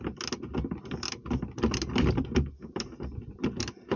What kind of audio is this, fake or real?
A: real